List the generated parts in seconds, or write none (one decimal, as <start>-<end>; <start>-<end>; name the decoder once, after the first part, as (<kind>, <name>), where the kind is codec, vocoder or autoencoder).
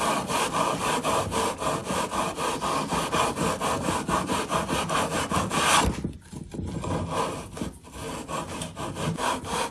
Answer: none